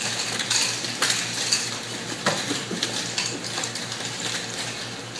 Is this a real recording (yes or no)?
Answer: yes